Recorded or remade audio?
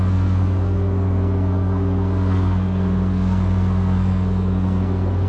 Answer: remade